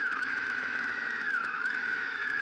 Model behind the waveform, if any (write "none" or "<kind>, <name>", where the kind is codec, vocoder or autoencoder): autoencoder, DAC-VAE